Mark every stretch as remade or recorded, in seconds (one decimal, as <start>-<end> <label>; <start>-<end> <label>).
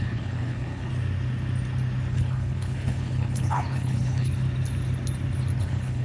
0.0-0.9 remade; 0.9-2.1 recorded; 2.1-4.3 remade; 4.3-5.6 recorded; 5.6-6.0 remade